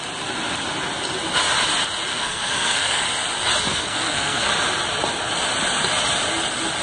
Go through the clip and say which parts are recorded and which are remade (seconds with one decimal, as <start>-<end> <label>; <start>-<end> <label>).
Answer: 0.0-2.1 recorded; 2.1-3.0 remade; 3.0-3.7 recorded; 3.7-4.5 remade; 4.5-6.8 recorded